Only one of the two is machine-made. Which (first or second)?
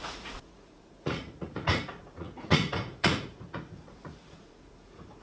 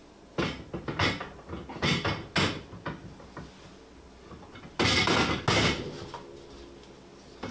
first